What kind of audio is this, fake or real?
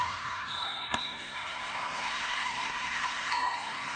fake